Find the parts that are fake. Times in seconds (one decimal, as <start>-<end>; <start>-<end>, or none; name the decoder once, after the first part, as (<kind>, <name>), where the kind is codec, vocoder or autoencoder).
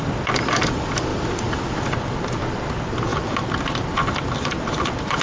none